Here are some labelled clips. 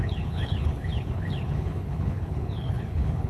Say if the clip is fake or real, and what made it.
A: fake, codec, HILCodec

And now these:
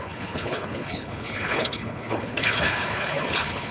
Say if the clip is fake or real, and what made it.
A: fake, codec, HILCodec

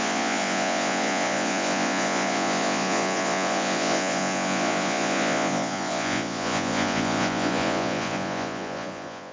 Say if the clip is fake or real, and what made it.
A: fake, vocoder, Vocos